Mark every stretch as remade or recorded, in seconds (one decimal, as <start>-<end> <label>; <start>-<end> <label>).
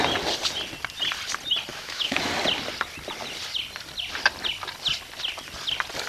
0.0-1.7 recorded; 1.7-2.3 remade; 2.3-6.1 recorded